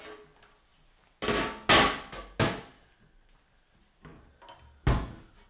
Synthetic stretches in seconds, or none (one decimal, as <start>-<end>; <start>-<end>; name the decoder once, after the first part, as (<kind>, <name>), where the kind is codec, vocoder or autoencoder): none